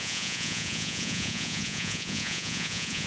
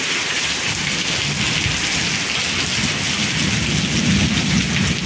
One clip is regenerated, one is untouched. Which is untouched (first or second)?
second